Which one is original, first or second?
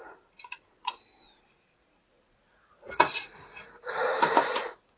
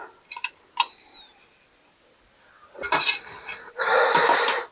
second